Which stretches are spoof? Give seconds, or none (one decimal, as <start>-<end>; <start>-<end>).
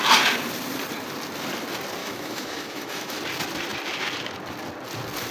2.0-3.2